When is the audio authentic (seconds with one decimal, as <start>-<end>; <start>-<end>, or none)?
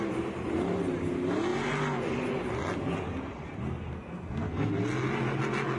0.0-3.9; 4.7-5.8